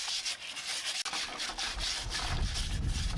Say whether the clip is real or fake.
real